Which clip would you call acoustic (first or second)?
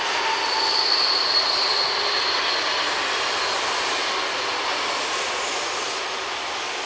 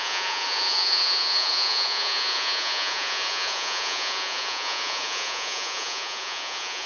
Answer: first